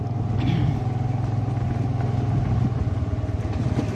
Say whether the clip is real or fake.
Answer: real